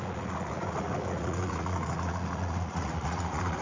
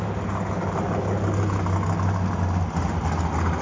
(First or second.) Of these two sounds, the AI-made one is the first